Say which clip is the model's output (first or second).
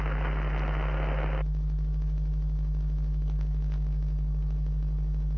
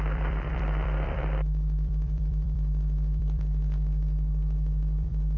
second